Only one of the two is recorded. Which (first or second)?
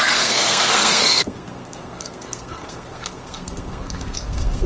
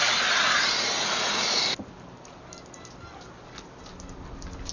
second